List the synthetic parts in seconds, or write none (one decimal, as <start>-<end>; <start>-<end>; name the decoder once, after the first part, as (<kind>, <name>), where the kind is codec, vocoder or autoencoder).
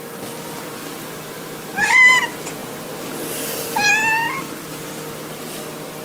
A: none